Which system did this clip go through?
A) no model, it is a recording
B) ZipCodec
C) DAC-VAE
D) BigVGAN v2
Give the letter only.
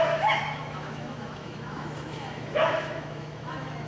C